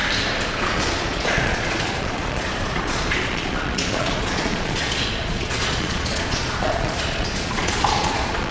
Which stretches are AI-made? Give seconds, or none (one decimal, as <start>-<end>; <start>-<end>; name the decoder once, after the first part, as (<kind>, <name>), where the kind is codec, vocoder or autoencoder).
0.6-8.5 (vocoder, Vocos)